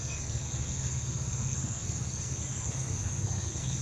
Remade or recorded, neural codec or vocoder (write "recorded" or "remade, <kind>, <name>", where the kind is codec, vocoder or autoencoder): remade, codec, SNAC